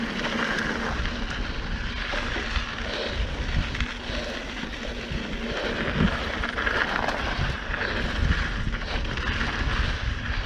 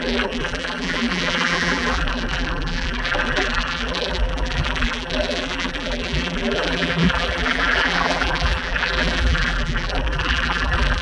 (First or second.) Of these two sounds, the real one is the first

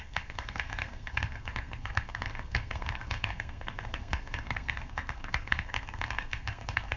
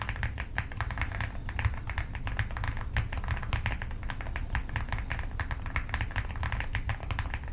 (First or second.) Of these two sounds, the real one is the second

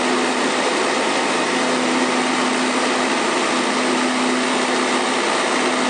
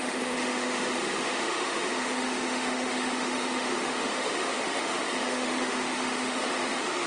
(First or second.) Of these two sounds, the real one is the first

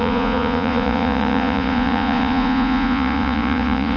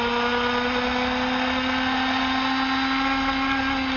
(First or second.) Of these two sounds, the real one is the second